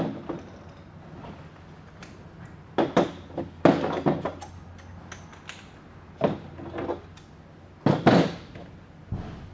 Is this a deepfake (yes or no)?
no